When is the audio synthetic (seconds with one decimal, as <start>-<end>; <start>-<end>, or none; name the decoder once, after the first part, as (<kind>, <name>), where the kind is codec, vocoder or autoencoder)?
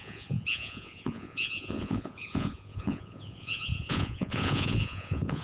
0.0-5.4 (vocoder, Vocos)